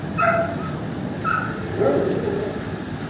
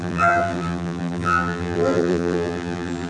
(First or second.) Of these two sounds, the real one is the first